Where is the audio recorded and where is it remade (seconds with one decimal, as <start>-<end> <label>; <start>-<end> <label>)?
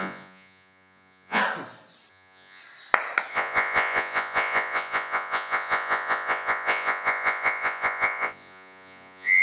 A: 0.0-1.4 remade; 1.4-2.1 recorded; 2.1-2.6 remade; 2.6-3.3 recorded; 3.3-9.4 remade